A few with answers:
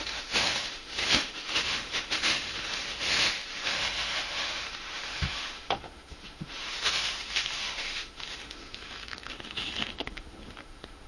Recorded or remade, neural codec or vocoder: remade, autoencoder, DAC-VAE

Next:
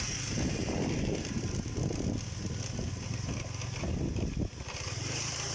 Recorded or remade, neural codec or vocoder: recorded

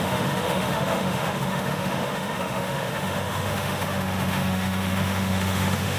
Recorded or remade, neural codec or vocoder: remade, autoencoder, DAC-VAE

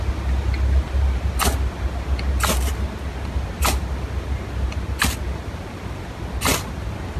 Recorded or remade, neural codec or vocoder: recorded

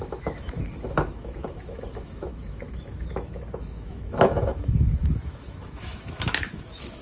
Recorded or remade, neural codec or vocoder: remade, autoencoder, DAC-VAE